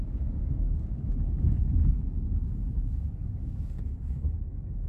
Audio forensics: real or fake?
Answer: fake